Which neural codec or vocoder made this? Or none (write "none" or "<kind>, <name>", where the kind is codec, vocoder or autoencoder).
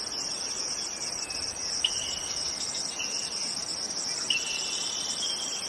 none